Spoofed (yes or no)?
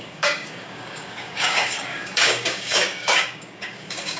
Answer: yes